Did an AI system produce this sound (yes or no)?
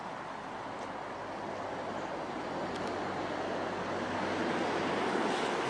no